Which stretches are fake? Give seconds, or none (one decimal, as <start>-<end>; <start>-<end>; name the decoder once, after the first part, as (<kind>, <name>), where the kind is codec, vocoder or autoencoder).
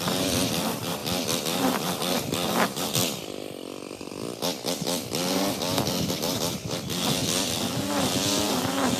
0.0-9.0 (vocoder, BigVGAN v2)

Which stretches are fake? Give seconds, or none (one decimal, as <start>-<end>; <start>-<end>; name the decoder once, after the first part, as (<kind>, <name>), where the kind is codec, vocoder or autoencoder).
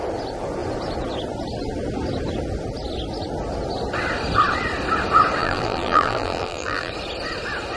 5.4-6.9 (vocoder, BigVGAN v2)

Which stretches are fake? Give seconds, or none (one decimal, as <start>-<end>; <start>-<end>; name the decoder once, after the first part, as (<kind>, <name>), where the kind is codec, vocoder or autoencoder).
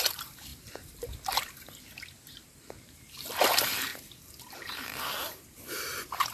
0.0-3.9 (vocoder, BigVGAN v2); 4.6-6.3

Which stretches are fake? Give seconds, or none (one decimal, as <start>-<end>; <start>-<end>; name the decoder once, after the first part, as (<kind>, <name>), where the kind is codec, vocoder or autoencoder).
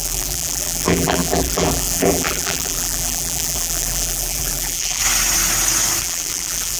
0.0-5.0 (vocoder, BigVGAN v2); 6.0-6.8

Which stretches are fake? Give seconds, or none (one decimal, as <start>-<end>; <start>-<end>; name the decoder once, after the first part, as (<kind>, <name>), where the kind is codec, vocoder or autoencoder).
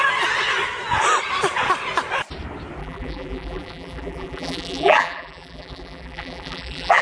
2.8-7.0 (vocoder, BigVGAN v2)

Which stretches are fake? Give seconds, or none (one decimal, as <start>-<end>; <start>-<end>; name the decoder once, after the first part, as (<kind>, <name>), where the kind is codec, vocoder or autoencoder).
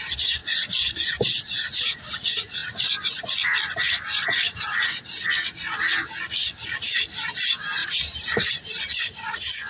0.4-2.1 (vocoder, BigVGAN v2); 7.8-9.0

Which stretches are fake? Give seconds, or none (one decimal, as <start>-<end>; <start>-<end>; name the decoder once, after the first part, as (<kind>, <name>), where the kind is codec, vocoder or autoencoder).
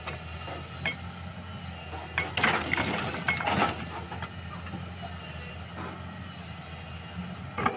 none